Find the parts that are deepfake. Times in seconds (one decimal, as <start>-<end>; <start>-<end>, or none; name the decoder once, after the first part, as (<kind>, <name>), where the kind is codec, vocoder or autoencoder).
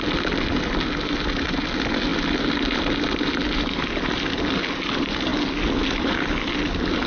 none